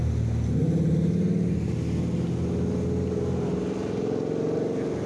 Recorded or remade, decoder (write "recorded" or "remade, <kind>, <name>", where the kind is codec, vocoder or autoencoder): recorded